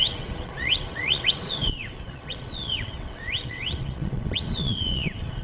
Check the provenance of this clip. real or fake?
fake